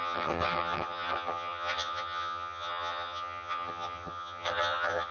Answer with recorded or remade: remade